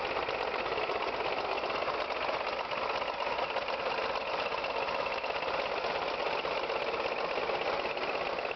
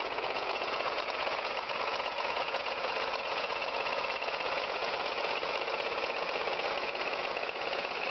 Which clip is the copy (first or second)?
second